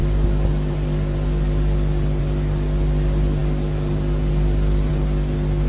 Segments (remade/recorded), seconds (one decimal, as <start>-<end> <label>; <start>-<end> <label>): 0.0-5.7 recorded